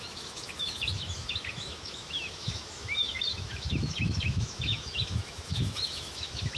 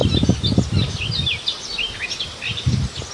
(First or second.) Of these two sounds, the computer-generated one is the first